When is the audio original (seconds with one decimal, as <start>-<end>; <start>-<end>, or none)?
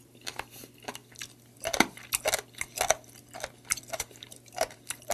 1.0-3.9